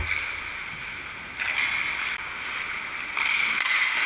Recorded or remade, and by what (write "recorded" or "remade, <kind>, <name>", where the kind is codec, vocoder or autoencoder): recorded